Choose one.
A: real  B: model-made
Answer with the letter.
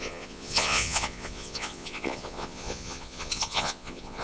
B